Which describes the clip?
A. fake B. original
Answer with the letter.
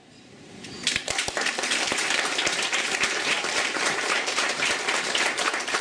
A